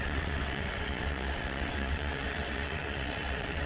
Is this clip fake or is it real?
fake